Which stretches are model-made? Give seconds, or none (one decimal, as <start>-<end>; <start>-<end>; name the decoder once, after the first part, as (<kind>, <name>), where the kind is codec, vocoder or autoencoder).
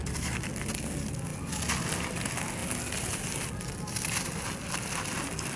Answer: none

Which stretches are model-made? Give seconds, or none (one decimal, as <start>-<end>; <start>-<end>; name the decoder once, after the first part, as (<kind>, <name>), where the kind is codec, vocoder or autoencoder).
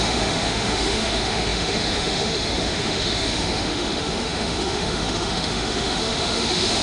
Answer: 0.0-6.8 (autoencoder, DAC-VAE)